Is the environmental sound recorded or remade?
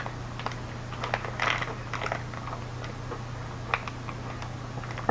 recorded